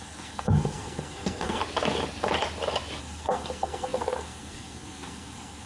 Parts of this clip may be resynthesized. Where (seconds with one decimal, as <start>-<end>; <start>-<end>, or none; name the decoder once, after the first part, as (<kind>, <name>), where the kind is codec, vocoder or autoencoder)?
0.0-1.6 (codec, SNAC); 3.0-5.7

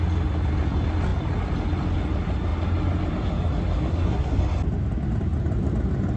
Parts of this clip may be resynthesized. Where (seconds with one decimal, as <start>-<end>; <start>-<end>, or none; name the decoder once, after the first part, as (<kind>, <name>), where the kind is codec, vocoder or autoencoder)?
3.9-4.4 (codec, SNAC)

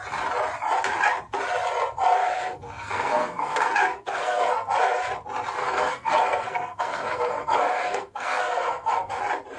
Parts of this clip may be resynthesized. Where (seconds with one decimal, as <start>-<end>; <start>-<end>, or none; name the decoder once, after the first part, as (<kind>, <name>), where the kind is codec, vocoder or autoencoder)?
2.2-5.0 (codec, SNAC); 5.6-9.2